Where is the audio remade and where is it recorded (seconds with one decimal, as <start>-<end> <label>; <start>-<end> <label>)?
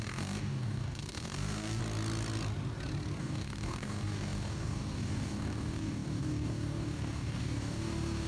0.0-1.8 remade; 1.8-3.2 recorded; 3.2-8.3 remade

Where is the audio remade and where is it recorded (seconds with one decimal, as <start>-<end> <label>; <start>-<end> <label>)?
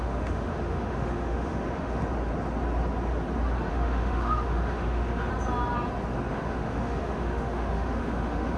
0.0-2.0 remade; 2.0-3.7 recorded; 3.7-5.3 remade; 5.3-6.3 recorded; 6.3-8.6 remade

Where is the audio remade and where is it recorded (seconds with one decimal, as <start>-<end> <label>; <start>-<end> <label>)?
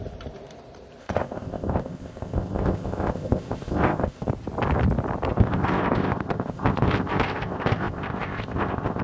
0.0-1.0 recorded; 1.0-4.3 remade; 4.3-5.3 recorded; 5.3-9.0 remade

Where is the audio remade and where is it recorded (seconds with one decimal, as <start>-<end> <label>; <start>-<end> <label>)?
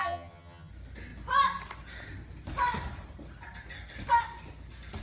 0.0-0.7 remade; 0.7-5.0 recorded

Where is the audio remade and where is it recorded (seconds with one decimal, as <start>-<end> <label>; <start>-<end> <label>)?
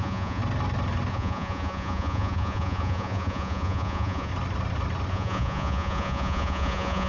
0.0-0.4 remade; 0.4-1.1 recorded; 1.1-4.3 remade; 4.3-5.1 recorded; 5.1-7.1 remade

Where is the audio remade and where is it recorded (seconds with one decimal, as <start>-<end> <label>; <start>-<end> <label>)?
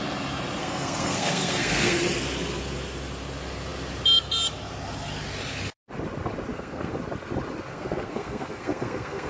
0.0-0.6 recorded; 0.6-2.0 remade; 2.0-6.5 recorded; 6.5-7.0 remade; 7.0-7.7 recorded; 7.7-9.3 remade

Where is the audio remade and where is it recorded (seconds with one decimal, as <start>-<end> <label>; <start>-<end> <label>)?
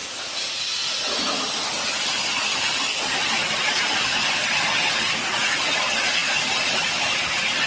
0.0-3.2 recorded; 3.2-4.5 remade; 4.5-7.7 recorded